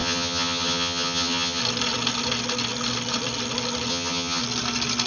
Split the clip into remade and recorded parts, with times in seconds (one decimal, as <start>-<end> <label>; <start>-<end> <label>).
0.0-1.6 remade; 1.6-3.9 recorded; 3.9-4.4 remade; 4.4-5.1 recorded